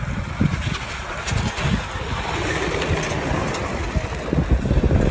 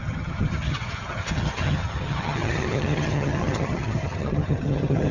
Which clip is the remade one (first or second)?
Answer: second